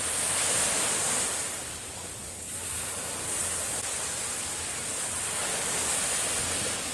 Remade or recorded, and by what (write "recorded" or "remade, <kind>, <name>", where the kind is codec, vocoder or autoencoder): recorded